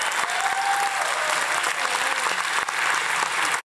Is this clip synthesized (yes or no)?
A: no